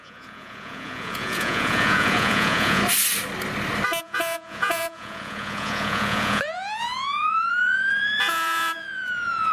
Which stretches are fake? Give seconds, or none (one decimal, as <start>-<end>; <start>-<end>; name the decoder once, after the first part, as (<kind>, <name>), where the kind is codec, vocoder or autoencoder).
0.0-2.8 (vocoder, Vocos); 4.0-9.5